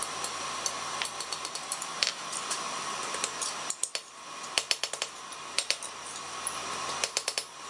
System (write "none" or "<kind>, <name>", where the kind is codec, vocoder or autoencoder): vocoder, BigVGAN v2